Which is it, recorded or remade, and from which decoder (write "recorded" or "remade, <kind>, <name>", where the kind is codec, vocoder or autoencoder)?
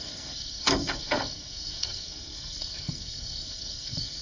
remade, codec, SNAC